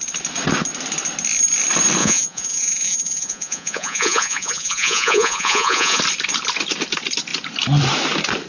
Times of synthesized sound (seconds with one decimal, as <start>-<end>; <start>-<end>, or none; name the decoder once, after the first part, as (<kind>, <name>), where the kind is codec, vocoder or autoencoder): 2.0-6.0 (vocoder, Vocos)